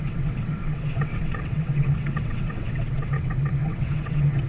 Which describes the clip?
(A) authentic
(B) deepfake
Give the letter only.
B